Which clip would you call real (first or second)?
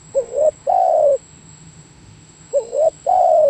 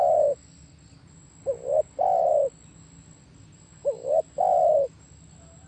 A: second